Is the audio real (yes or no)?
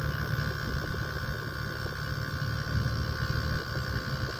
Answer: yes